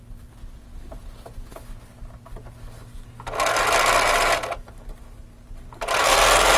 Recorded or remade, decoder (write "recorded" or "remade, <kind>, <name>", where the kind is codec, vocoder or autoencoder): recorded